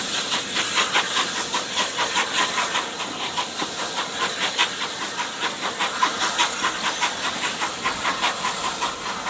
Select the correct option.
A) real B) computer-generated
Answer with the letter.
A